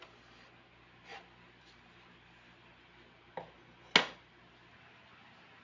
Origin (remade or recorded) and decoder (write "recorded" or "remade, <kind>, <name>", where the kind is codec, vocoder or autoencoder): recorded